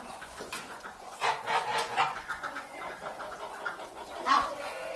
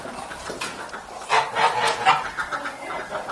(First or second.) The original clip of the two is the second